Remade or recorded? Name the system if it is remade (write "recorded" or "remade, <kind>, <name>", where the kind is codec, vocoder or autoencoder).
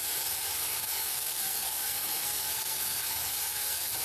remade, codec, SNAC